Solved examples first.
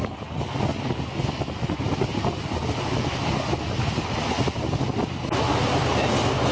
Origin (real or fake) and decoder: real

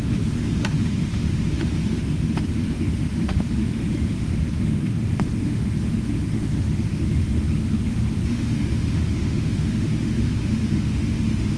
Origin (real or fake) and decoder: fake, autoencoder, DAC-VAE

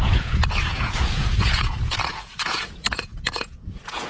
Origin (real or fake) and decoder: fake, vocoder, Vocos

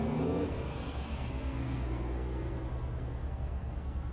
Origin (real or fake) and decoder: fake, codec, SNAC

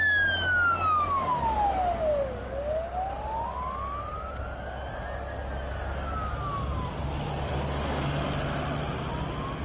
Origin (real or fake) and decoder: real